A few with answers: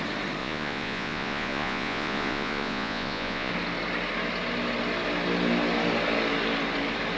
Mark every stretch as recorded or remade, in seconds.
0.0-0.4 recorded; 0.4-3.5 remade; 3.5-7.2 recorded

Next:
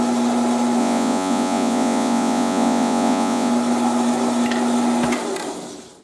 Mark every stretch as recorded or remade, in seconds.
0.0-0.8 recorded; 0.8-3.5 remade; 3.5-6.0 recorded

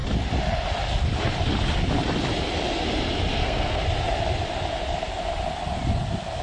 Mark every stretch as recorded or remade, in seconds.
0.0-3.3 recorded; 3.3-3.8 remade; 3.8-6.4 recorded

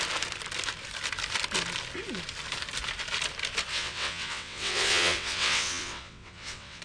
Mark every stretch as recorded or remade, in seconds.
0.0-3.7 recorded; 3.7-6.8 remade

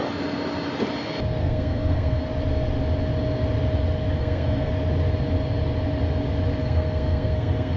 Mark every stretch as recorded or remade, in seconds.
0.0-1.4 recorded; 1.4-2.2 remade; 2.2-4.2 recorded; 4.2-4.7 remade; 4.7-6.6 recorded; 6.6-7.8 remade

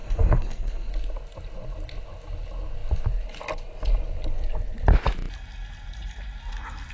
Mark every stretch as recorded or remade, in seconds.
0.0-0.9 remade; 0.9-6.9 recorded

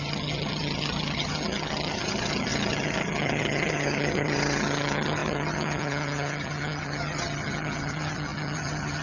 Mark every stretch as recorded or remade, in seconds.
0.0-9.0 remade